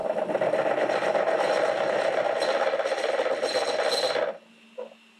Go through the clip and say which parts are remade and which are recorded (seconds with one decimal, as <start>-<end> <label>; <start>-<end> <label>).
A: 0.0-5.2 recorded